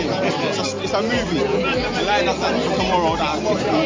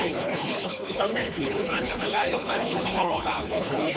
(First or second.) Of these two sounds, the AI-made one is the second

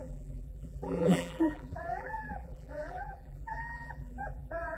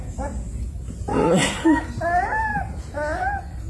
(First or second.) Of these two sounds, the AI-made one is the first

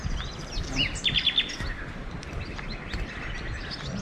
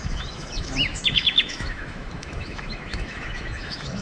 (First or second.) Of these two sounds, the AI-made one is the second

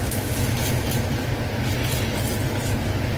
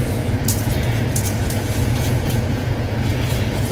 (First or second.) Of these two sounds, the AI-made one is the second